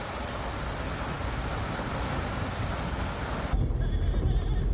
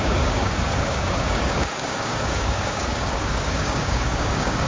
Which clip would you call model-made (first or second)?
second